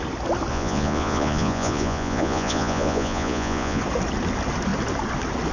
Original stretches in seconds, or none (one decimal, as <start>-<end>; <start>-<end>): 0.0-0.5; 3.8-5.5